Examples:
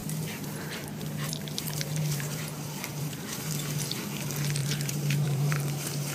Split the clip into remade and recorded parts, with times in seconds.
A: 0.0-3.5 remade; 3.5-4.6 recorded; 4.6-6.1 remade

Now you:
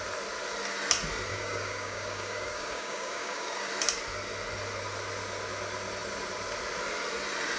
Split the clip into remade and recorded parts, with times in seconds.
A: 0.0-1.3 recorded; 1.3-3.7 remade; 3.7-7.6 recorded

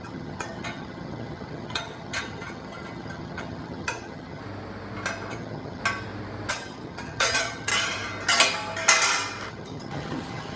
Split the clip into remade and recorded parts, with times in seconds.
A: 0.0-4.4 remade; 4.4-5.3 recorded; 5.3-5.8 remade; 5.8-6.5 recorded; 6.5-7.7 remade; 7.7-9.5 recorded; 9.5-10.6 remade

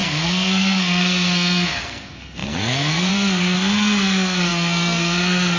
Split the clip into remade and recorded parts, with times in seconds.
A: 0.0-5.6 remade

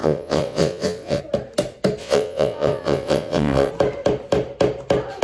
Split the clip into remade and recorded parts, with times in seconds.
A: 0.0-1.2 remade; 1.2-2.0 recorded; 2.0-3.7 remade; 3.7-5.2 recorded

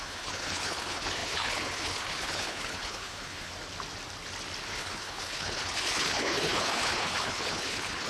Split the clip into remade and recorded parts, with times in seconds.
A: 0.0-3.5 remade; 3.5-4.7 recorded; 4.7-8.1 remade

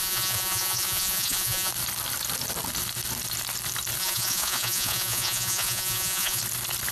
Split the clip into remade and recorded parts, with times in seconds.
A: 0.0-1.7 remade; 1.7-4.0 recorded; 4.0-6.4 remade; 6.4-6.9 recorded